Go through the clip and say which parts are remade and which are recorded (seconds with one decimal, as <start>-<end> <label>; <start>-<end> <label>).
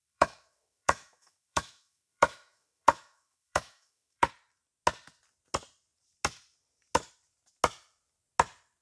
0.0-4.3 remade; 4.3-8.8 recorded